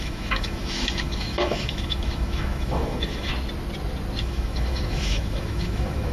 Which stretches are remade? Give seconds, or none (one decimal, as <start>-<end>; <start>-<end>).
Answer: 0.0-3.3; 4.2-6.1